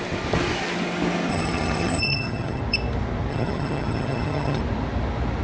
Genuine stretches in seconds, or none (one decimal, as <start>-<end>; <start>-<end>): 0.0-1.3; 2.6-3.3; 4.6-5.4